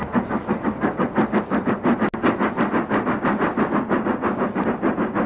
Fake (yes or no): no